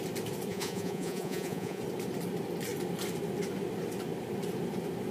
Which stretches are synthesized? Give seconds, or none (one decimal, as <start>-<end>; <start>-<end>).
0.5-1.8